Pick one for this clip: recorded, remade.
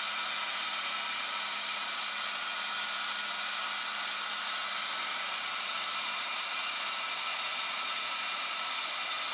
recorded